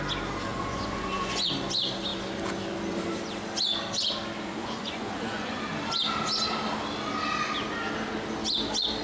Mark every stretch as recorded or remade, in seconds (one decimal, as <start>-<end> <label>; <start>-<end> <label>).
0.0-0.5 recorded; 0.5-1.5 remade; 1.5-4.6 recorded; 4.6-5.6 remade; 5.6-9.0 recorded